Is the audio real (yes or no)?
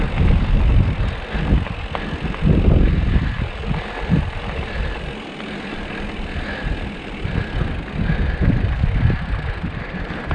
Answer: yes